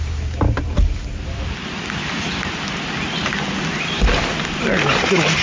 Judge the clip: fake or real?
real